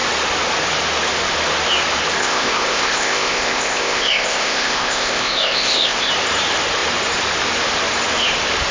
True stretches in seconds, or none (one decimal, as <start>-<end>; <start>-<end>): 0.0-2.2; 6.1-8.7